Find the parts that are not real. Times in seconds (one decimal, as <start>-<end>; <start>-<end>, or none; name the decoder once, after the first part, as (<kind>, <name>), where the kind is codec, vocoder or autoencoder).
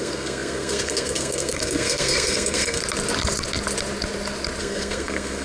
0.0-2.8 (codec, SNAC); 4.6-5.4